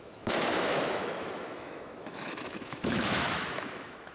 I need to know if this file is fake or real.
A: fake